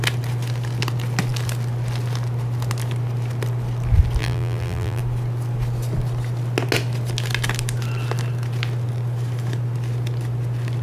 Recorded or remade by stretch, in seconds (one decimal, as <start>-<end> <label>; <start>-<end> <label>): 0.0-4.2 recorded; 4.2-5.0 remade; 5.0-10.8 recorded